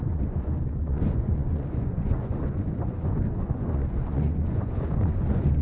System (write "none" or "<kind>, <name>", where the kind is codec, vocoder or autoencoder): vocoder, Vocos